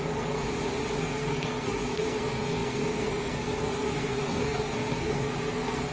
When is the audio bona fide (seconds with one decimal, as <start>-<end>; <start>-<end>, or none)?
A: 0.4-1.0